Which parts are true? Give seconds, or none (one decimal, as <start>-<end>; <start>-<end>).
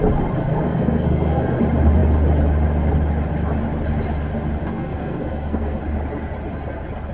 0.0-0.4; 1.6-4.6; 5.8-7.1